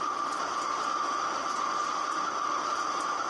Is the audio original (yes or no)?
yes